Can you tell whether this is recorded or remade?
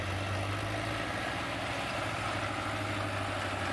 recorded